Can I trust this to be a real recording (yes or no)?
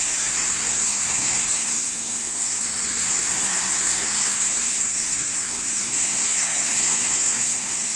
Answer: no